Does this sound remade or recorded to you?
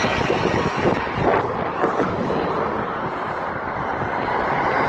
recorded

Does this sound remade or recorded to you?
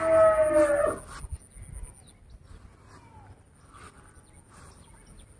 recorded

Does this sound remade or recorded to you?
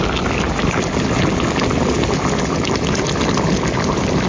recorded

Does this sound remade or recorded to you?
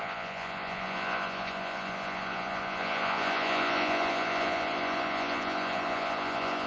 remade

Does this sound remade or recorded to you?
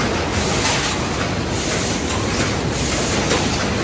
recorded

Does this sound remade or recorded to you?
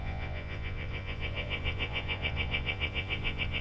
remade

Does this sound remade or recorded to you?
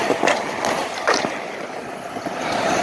recorded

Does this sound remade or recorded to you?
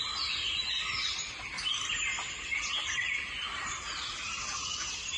recorded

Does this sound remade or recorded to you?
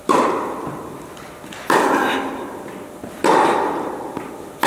remade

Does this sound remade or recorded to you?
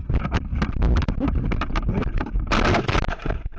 recorded